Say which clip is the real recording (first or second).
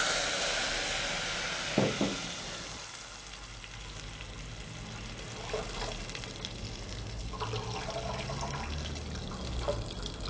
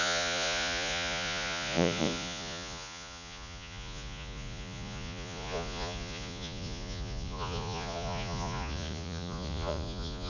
first